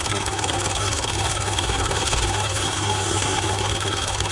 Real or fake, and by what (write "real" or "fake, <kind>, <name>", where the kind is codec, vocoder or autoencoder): fake, codec, SNAC